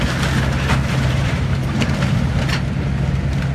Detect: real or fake real